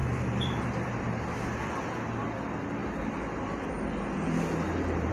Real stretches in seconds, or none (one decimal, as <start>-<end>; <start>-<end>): 0.6-5.1